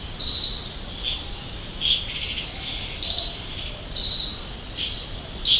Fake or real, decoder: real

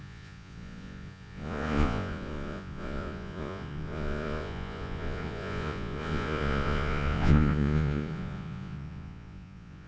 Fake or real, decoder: fake, vocoder, Vocos